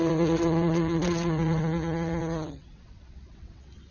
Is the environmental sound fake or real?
fake